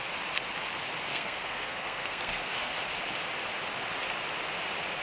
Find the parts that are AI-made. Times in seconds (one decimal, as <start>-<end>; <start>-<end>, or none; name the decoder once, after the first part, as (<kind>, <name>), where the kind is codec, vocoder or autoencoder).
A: 1.1-2.7 (codec, SNAC)